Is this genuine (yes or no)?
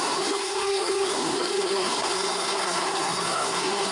no